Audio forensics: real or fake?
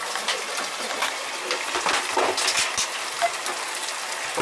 real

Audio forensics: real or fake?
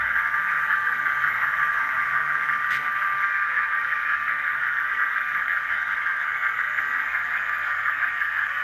fake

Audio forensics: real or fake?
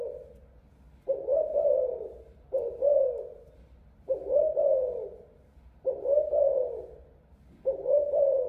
real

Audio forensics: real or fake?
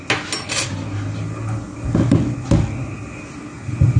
real